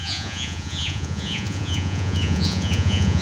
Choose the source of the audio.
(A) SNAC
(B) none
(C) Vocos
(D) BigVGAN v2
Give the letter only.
C